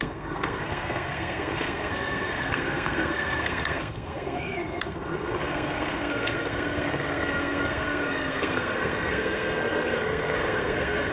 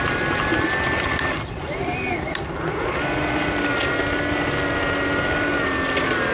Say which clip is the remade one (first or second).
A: first